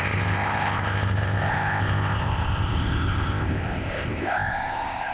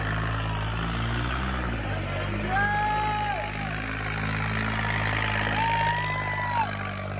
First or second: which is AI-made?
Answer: first